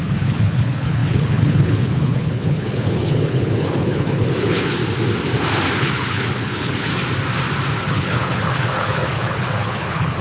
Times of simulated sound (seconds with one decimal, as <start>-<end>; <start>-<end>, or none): 0.0-4.8; 5.7-6.9; 7.8-10.2